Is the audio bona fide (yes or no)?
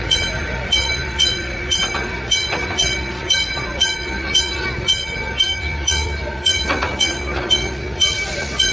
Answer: no